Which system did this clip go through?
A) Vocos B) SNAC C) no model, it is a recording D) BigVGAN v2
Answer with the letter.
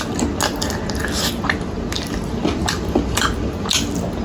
C